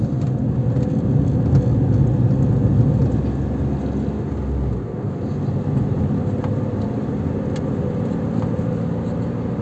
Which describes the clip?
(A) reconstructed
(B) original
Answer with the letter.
B